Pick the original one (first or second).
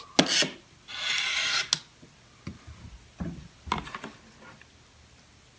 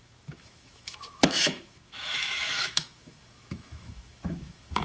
first